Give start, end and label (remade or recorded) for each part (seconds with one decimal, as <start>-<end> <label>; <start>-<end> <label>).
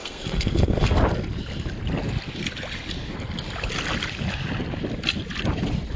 0.0-1.0 remade; 1.0-6.0 recorded